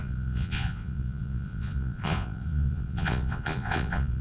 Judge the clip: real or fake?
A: fake